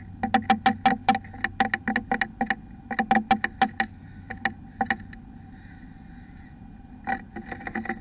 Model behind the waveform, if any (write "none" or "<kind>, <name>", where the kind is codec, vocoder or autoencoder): none